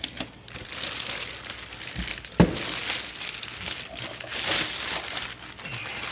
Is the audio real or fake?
real